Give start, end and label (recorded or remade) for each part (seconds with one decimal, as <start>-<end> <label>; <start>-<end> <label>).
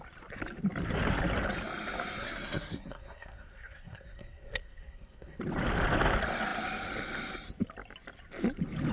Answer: 0.0-2.2 recorded; 2.2-5.4 remade; 5.4-8.9 recorded